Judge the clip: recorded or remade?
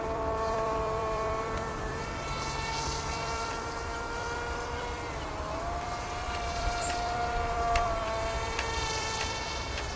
remade